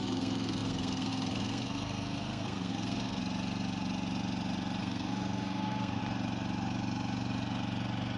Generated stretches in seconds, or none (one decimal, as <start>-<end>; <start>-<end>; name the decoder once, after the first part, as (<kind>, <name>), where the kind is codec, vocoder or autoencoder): 0.0-3.2 (codec, SNAC); 4.8-6.0